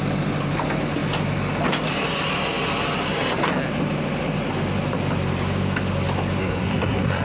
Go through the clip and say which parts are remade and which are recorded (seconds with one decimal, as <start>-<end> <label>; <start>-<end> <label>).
0.0-6.4 recorded; 6.4-7.2 remade